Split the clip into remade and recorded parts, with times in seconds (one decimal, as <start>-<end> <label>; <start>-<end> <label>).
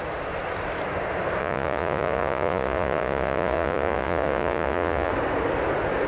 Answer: 0.0-1.4 recorded; 1.4-5.1 remade; 5.1-6.1 recorded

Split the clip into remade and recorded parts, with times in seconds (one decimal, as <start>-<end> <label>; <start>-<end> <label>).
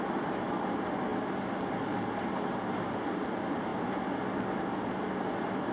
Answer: 0.0-5.7 recorded